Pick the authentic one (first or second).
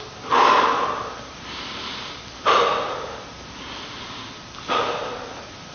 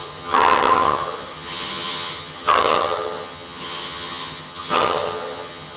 first